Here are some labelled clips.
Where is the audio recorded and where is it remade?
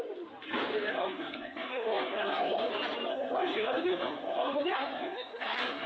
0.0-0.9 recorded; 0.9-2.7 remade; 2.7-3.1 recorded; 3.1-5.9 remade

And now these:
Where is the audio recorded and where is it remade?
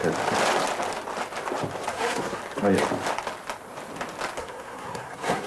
0.0-1.9 recorded; 1.9-2.4 remade; 2.4-4.4 recorded; 4.4-5.5 remade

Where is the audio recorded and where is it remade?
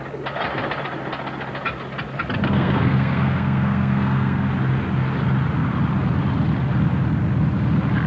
0.0-2.4 recorded; 2.4-4.5 remade; 4.5-8.1 recorded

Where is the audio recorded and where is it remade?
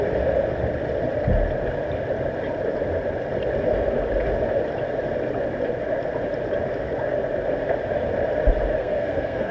0.0-8.8 recorded; 8.8-9.5 remade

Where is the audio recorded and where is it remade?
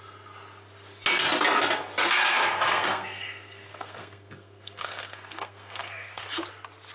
0.0-2.3 recorded; 2.3-6.4 remade; 6.4-6.9 recorded